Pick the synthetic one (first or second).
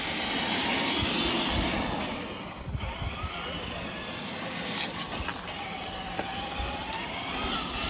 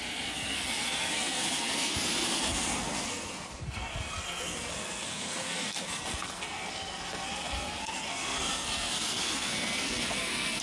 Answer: second